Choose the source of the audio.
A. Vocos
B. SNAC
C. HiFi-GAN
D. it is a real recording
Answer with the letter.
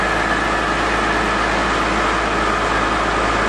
D